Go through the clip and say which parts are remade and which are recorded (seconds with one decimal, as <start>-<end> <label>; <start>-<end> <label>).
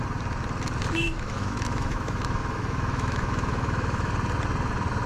0.0-1.0 recorded; 1.0-4.1 remade; 4.1-5.1 recorded